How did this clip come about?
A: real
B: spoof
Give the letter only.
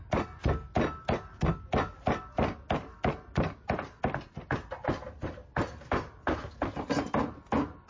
A